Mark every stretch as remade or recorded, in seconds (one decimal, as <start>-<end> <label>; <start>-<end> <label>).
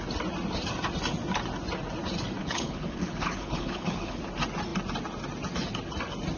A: 0.0-2.4 recorded; 2.4-4.2 remade; 4.2-6.4 recorded